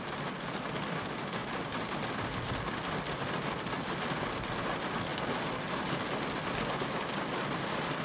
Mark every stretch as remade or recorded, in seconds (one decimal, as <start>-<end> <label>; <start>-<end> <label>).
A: 0.0-8.0 recorded